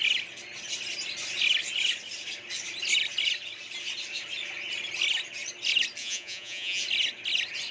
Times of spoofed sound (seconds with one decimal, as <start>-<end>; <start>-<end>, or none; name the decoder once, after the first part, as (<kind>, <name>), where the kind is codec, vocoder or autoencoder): 6.0-6.8 (vocoder, Vocos)